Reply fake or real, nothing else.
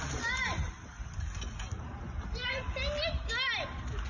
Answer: real